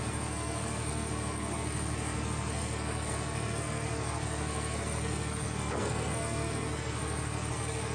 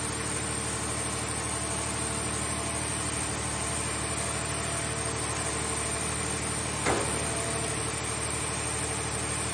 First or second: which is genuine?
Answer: second